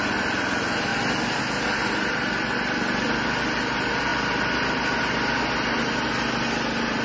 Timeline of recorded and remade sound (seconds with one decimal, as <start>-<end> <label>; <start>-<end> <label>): 0.0-7.0 recorded